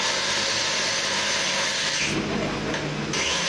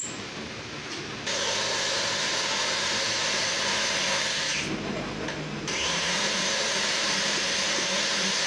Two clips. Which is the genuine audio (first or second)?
first